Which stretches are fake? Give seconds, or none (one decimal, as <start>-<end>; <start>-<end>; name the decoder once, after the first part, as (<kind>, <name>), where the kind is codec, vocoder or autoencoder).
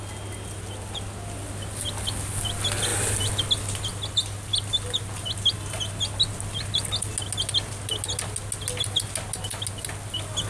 none